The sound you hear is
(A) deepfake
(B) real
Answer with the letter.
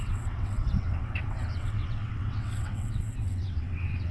A